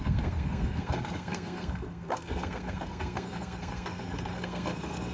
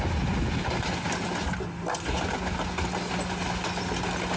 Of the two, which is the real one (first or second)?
second